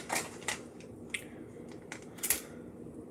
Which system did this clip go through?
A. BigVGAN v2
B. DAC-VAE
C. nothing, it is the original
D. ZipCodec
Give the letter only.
C